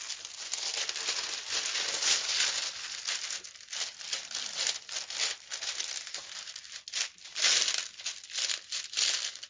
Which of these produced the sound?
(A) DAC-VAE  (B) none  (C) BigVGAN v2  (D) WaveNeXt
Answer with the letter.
B